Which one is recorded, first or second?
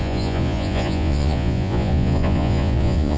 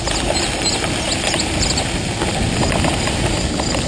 second